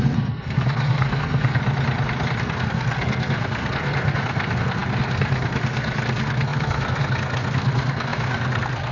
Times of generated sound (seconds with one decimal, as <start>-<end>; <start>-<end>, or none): 0.0-1.6; 2.4-8.9